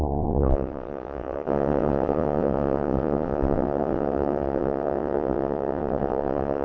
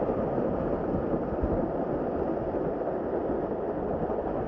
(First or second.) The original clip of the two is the second